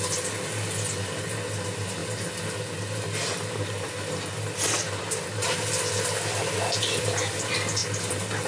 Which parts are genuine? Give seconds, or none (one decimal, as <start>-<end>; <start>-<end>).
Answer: 0.0-8.5